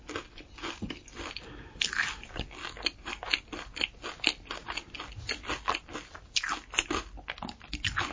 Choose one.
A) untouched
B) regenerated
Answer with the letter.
A